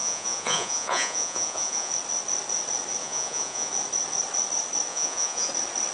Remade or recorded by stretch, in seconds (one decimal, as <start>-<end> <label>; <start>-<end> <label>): 0.0-1.9 remade; 1.9-3.0 recorded; 3.0-3.7 remade; 3.7-4.9 recorded; 4.9-5.5 remade; 5.5-5.9 recorded